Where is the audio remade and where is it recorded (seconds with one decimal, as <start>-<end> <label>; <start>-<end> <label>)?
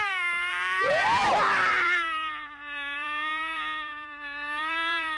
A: 0.0-5.2 remade